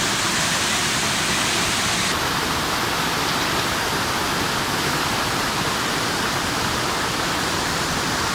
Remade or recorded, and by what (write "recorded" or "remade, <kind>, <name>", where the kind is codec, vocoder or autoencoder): recorded